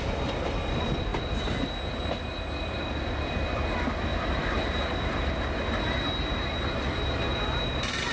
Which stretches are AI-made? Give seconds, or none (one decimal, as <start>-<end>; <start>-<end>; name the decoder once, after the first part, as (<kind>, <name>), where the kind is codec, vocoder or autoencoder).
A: none